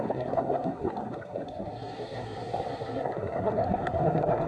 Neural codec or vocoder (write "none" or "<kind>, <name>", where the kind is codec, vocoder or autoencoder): codec, SNAC